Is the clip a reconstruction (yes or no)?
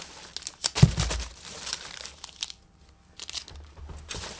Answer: no